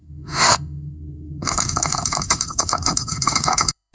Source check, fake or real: fake